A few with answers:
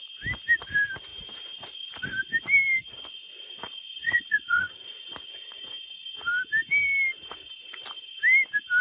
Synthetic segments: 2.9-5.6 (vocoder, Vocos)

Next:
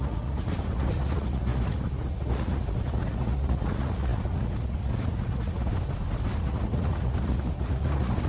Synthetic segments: 0.0-5.7 (vocoder, Vocos); 6.4-8.3

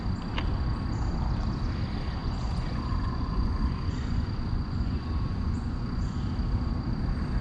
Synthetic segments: 2.2-6.2 (vocoder, Vocos)

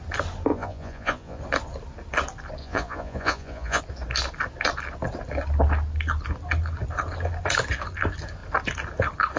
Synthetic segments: 0.5-1.4 (vocoder, Vocos); 2.6-3.8

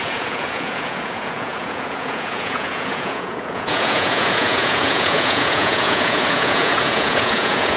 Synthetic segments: 0.0-7.8 (vocoder, Vocos)

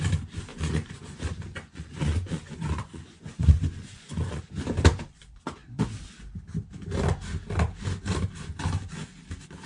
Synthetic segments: 0.5-4.4 (vocoder, Vocos)